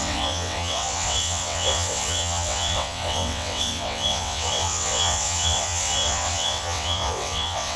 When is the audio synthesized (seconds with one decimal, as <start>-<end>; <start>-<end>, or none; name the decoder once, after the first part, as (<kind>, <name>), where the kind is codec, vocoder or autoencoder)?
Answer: 0.0-7.8 (vocoder, WaveNeXt)